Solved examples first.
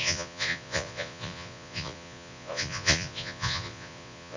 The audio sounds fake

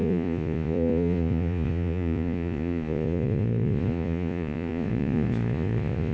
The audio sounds fake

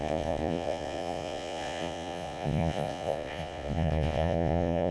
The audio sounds fake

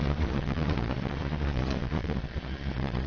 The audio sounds fake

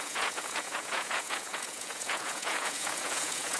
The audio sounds fake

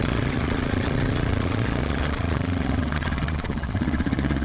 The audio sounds fake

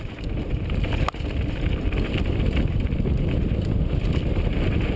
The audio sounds real